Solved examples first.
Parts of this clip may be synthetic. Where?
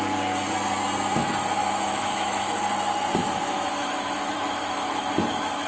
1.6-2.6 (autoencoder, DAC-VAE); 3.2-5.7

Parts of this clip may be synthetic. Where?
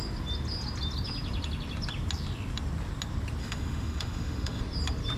3.4-4.6 (autoencoder, DAC-VAE)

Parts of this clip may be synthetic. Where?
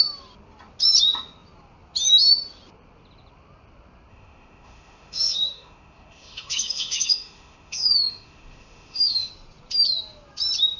4.1-9.3 (autoencoder, DAC-VAE)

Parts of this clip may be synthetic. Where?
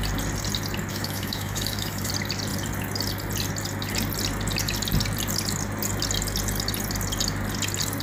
0.9-2.1 (autoencoder, DAC-VAE)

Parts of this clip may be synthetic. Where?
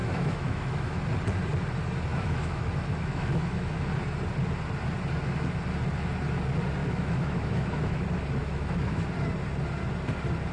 0.0-1.0 (autoencoder, DAC-VAE); 2.1-3.8; 6.8-8.0; 8.4-9.1